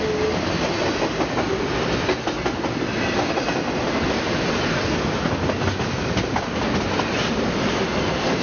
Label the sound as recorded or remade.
recorded